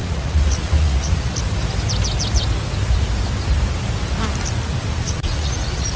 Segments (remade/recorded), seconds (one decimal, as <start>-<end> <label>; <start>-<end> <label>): 0.0-1.3 remade; 1.3-4.9 recorded; 4.9-6.0 remade